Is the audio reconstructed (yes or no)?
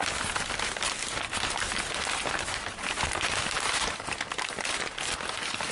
no